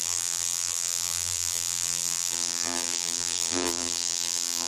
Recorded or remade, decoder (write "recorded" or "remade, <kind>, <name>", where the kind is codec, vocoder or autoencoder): remade, vocoder, BigVGAN v2